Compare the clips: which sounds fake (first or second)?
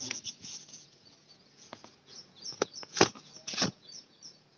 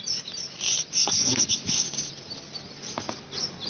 first